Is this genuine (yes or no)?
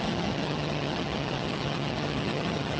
no